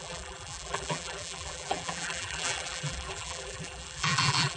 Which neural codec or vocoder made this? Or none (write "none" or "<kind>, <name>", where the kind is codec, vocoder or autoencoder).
vocoder, BigVGAN v2